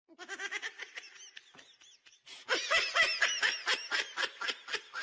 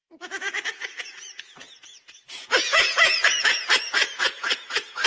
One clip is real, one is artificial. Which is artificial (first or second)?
second